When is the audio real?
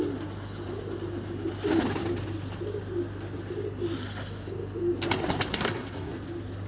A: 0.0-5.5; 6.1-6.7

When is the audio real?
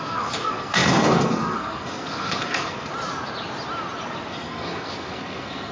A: 2.9-4.3